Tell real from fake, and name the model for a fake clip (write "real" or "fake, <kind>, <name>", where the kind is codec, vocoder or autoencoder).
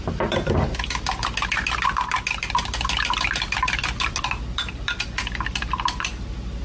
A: real